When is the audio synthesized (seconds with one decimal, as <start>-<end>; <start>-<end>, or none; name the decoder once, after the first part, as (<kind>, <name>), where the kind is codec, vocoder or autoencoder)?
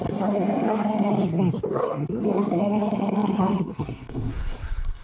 0.0-1.1 (codec, SNAC); 1.7-5.0